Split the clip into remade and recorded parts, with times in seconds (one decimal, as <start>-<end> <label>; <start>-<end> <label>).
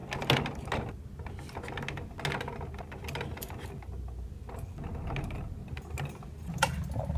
0.0-7.2 recorded